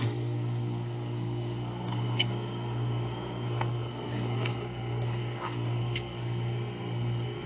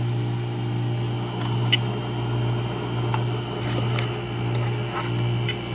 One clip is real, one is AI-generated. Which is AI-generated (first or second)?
first